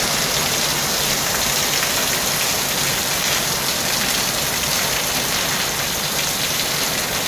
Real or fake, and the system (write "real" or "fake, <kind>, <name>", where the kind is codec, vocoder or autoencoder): real